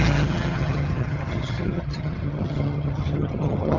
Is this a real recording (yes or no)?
no